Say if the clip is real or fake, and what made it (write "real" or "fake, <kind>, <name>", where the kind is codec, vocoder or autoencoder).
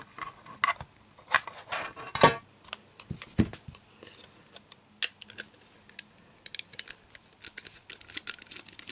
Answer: real